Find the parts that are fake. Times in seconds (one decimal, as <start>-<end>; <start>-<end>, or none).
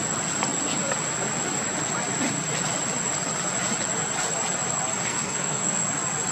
5.0-5.8